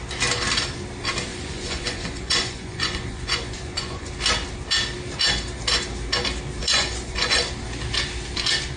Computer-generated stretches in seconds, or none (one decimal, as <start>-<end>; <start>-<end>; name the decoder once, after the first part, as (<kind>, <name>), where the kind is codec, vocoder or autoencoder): 1.3-4.1 (vocoder, Vocos); 6.6-7.4